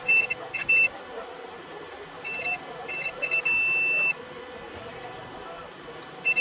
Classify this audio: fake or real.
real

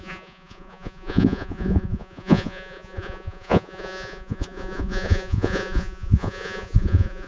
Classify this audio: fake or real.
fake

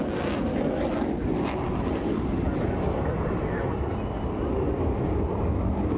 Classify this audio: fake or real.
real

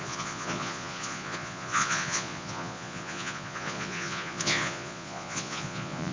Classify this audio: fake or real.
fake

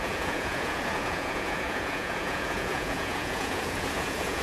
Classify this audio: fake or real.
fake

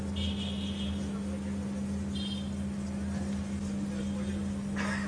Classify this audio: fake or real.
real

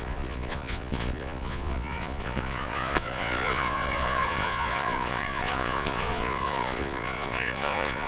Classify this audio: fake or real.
fake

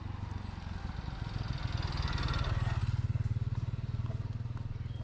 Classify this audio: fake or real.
real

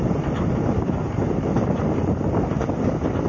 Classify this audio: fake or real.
real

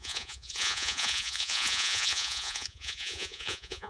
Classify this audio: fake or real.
fake